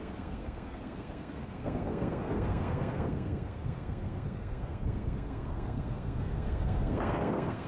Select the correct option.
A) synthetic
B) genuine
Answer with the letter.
A